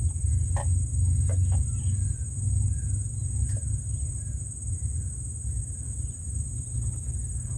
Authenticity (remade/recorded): recorded